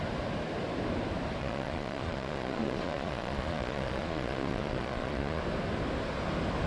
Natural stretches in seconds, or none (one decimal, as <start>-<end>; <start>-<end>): 0.0-1.4; 5.4-6.7